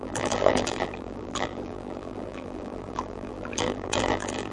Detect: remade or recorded remade